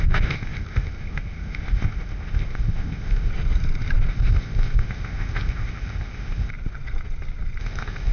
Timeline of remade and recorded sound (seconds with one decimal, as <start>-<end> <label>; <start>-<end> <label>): 0.0-3.3 remade; 3.3-4.1 recorded; 4.1-6.5 remade; 6.5-7.6 recorded; 7.6-8.1 remade